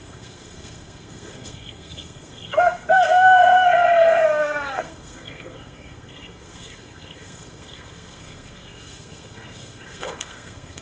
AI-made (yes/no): yes